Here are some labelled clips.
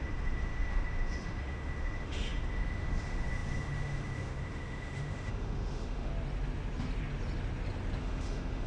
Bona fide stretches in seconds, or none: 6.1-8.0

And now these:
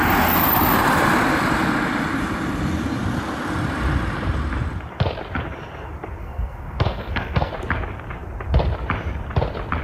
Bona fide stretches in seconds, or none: 0.0-6.2; 7.5-9.8

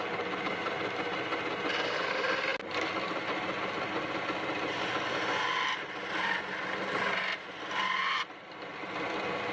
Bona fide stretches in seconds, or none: 0.0-9.5

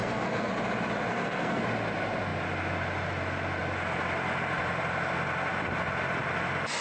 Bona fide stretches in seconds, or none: 0.5-1.1; 1.6-6.8